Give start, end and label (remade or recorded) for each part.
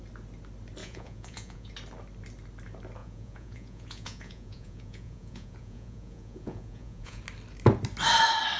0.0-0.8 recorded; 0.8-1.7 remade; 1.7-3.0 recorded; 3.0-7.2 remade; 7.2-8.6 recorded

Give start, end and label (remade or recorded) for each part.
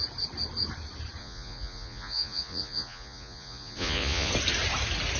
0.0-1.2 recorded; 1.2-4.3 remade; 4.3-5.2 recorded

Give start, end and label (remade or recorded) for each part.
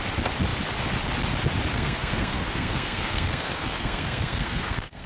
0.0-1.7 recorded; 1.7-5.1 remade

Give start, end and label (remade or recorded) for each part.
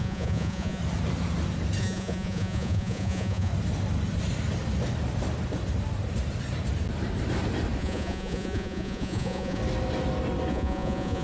0.0-0.8 remade; 0.8-1.8 recorded; 1.8-3.5 remade; 3.5-7.8 recorded; 7.8-9.6 remade; 9.6-10.5 recorded; 10.5-11.2 remade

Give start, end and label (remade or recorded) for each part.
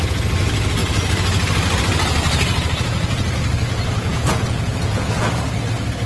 0.0-4.1 recorded; 4.1-5.3 remade; 5.3-6.1 recorded